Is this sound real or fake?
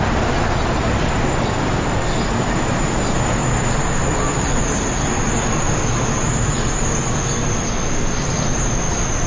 real